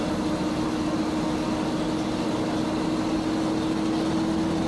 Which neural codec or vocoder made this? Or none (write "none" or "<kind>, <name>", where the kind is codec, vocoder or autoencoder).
none